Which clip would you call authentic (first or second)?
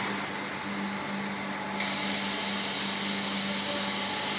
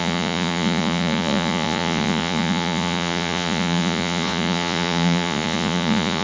first